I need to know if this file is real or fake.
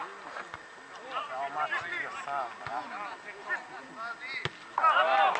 real